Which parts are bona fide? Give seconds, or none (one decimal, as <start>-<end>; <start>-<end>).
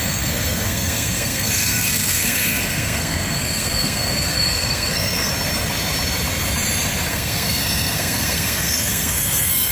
5.3-7.1